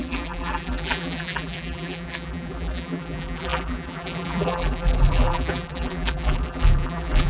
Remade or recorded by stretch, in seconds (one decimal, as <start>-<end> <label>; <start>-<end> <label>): 0.0-7.3 remade